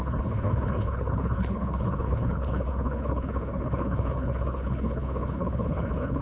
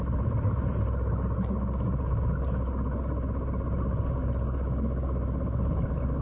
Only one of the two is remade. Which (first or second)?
first